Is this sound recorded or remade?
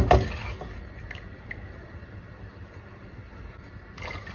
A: recorded